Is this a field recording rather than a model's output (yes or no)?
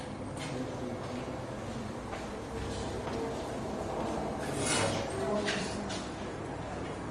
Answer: yes